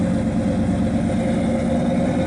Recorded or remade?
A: recorded